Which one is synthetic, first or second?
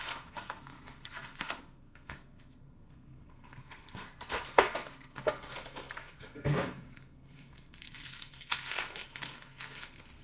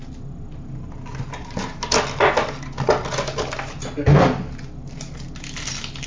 first